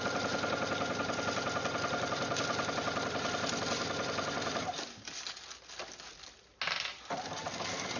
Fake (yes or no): no